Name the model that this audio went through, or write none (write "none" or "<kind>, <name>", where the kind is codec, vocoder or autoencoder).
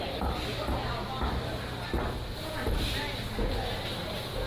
none